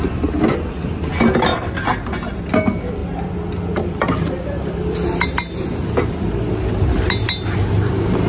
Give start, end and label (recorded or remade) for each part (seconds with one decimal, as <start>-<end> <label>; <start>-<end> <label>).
0.0-8.3 recorded

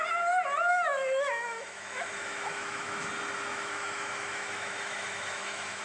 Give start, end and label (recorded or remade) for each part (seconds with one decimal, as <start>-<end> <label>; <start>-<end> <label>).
0.0-0.7 recorded; 0.7-3.1 remade; 3.1-3.5 recorded; 3.5-5.8 remade